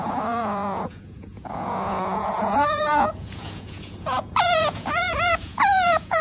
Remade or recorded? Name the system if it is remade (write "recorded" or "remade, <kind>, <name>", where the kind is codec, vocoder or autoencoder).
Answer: remade, vocoder, Vocos